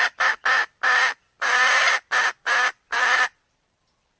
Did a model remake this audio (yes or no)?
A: yes